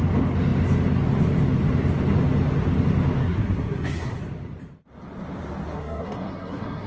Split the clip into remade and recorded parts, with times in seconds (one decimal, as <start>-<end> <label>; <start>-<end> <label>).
0.0-3.2 recorded; 3.2-4.2 remade; 4.2-5.7 recorded; 5.7-6.9 remade